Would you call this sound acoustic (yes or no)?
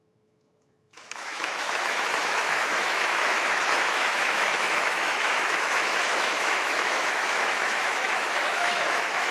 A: no